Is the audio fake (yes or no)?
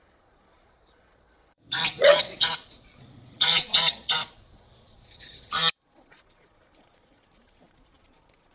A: yes